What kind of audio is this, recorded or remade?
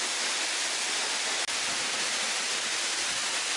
recorded